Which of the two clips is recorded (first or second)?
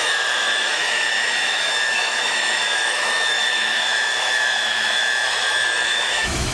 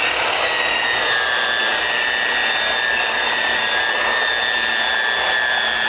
second